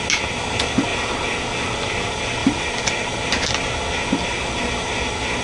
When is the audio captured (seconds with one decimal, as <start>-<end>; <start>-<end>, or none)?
0.0-5.4